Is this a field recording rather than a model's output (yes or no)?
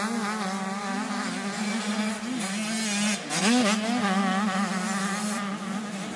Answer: yes